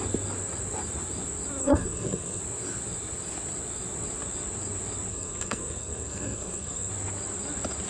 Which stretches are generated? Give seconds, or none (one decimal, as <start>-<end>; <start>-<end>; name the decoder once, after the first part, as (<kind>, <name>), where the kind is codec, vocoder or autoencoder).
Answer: 1.6-2.4 (codec, SNAC); 5.1-6.9